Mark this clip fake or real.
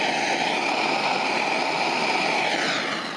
real